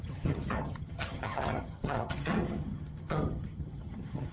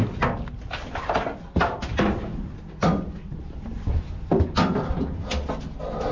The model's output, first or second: first